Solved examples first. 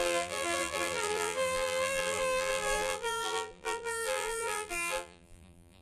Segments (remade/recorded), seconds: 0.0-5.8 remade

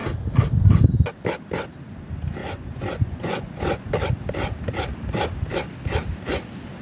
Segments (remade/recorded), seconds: 0.0-2.4 recorded; 2.4-3.9 remade; 3.9-6.8 recorded

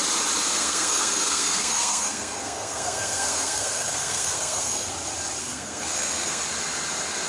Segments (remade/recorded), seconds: 0.0-0.5 recorded; 0.5-4.9 remade; 4.9-5.4 recorded; 5.4-6.4 remade; 6.4-7.3 recorded